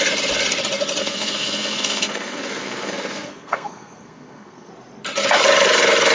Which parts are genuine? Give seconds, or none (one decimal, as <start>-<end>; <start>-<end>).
0.0-1.0; 4.7-6.1